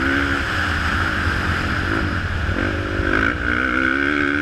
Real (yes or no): yes